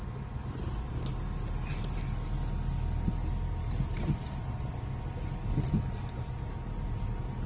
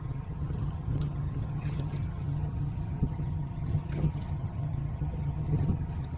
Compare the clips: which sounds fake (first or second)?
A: second